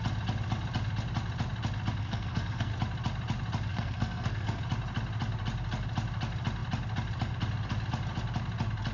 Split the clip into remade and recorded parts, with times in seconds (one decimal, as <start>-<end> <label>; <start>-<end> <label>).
0.0-2.0 recorded; 2.0-2.7 remade; 2.7-3.7 recorded; 3.7-4.6 remade; 4.6-8.9 recorded